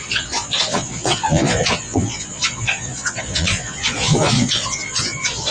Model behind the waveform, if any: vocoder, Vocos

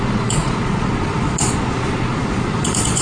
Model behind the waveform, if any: vocoder, Vocos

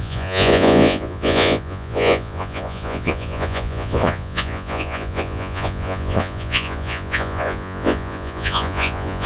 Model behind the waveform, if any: vocoder, Vocos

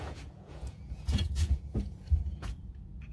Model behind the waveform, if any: vocoder, Vocos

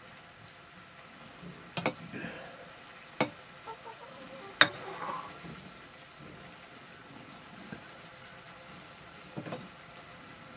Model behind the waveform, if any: none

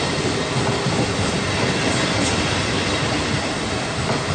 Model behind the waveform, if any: none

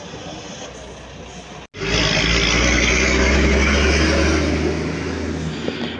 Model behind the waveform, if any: none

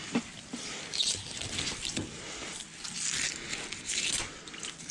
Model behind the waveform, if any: none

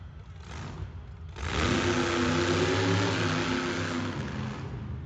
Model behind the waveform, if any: none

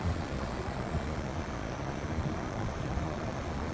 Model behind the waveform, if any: vocoder, Vocos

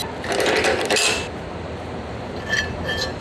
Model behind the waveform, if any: none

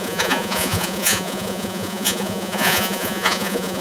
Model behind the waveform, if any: vocoder, Vocos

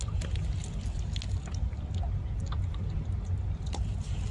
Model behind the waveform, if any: none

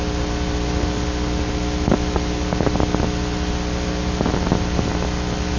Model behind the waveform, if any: none